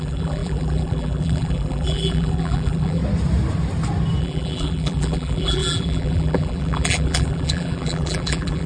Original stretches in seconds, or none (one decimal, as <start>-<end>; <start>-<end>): 3.0-4.2